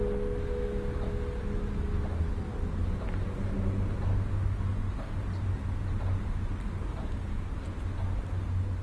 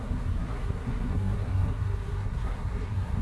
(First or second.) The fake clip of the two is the second